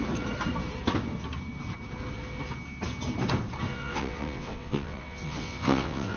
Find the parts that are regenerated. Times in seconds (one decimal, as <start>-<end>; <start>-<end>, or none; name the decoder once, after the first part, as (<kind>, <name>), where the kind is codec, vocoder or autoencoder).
3.7-6.2 (vocoder, WaveNeXt)